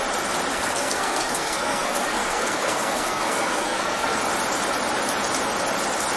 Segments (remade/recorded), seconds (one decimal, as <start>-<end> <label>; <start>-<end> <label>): 0.0-0.5 recorded; 0.5-4.2 remade; 4.2-6.2 recorded